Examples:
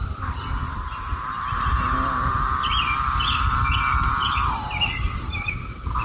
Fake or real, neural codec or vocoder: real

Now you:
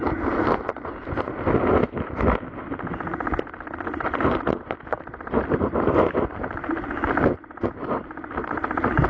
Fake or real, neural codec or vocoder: real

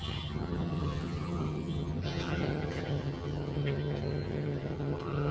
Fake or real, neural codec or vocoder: fake, vocoder, HiFi-GAN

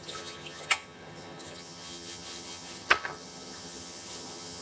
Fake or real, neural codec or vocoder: fake, vocoder, HiFi-GAN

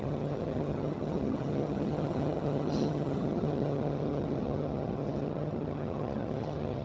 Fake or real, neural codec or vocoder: fake, vocoder, HiFi-GAN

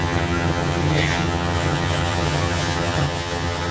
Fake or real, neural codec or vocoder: fake, vocoder, HiFi-GAN